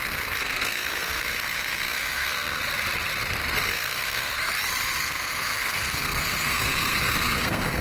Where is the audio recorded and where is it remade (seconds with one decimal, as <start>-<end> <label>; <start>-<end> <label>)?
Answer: 0.0-2.6 remade; 2.6-3.7 recorded; 3.7-4.3 remade; 4.3-5.0 recorded; 5.0-7.8 remade

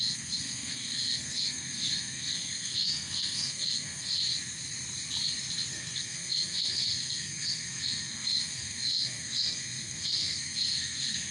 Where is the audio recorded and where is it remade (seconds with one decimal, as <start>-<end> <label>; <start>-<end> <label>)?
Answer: 0.0-4.2 remade; 4.2-5.7 recorded; 5.7-11.3 remade

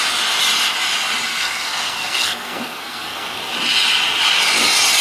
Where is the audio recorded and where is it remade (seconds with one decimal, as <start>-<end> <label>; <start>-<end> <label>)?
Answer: 0.0-1.3 recorded; 1.3-3.4 remade; 3.4-5.0 recorded

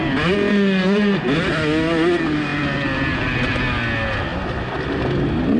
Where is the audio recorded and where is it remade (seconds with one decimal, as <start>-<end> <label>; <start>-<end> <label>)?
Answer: 0.0-5.6 recorded